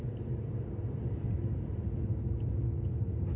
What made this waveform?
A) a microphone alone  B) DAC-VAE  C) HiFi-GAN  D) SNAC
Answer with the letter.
A